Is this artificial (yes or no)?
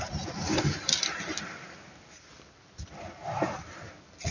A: no